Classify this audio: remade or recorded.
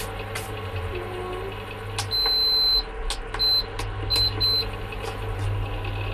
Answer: recorded